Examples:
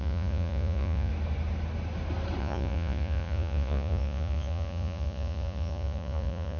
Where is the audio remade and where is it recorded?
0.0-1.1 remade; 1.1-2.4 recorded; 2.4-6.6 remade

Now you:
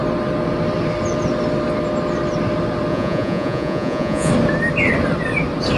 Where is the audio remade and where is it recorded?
0.0-2.9 recorded; 2.9-4.3 remade; 4.3-5.8 recorded

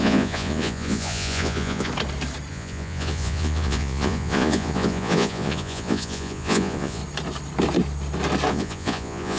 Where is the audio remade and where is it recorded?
0.0-1.9 remade; 1.9-2.5 recorded; 2.5-7.0 remade; 7.0-8.5 recorded; 8.5-9.4 remade

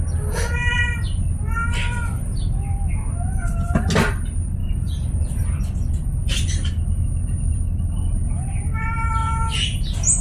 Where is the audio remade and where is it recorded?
0.0-4.6 recorded; 4.6-5.3 remade; 5.3-9.2 recorded; 9.2-10.2 remade

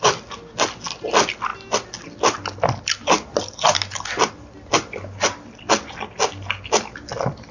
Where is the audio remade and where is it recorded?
0.0-7.5 recorded